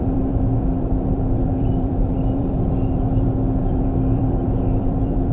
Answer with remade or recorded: remade